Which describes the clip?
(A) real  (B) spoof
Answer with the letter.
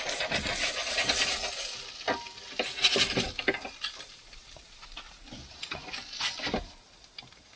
A